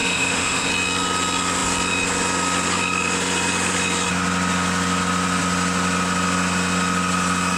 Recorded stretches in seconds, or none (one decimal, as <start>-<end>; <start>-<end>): 0.7-7.6